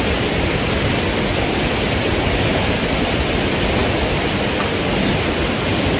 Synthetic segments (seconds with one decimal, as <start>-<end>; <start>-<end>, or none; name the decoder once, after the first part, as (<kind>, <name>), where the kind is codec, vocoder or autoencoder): none